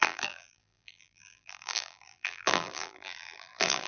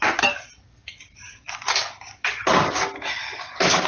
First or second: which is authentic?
second